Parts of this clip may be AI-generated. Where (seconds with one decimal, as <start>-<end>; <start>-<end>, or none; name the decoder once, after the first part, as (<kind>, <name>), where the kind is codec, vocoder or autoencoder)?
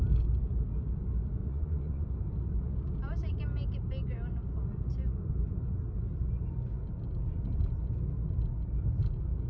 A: 1.4-2.1 (vocoder, Vocos)